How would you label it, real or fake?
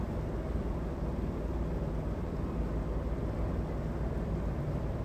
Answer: real